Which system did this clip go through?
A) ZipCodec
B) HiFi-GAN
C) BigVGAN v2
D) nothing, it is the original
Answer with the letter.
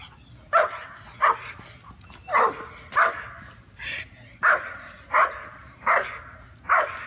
D